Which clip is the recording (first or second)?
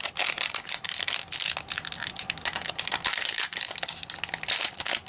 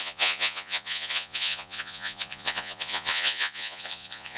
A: first